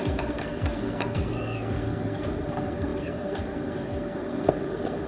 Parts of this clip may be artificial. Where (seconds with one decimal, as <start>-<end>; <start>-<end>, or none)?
0.0-5.1